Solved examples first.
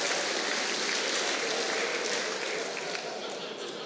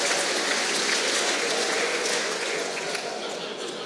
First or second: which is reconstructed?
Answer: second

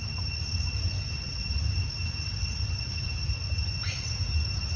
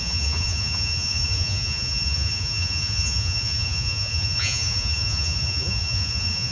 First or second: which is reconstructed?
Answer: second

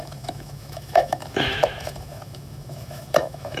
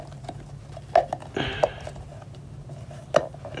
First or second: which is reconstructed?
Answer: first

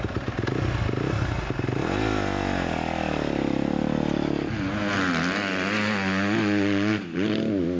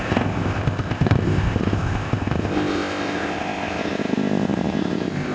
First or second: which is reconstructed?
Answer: second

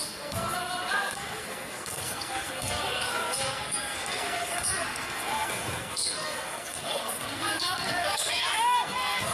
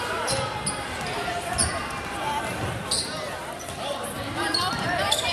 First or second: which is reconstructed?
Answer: first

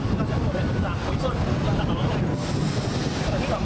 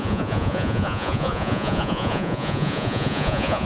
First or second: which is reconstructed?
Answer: second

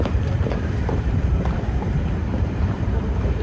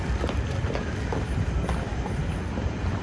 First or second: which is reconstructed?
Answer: first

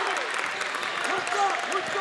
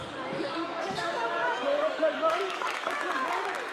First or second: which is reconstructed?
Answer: second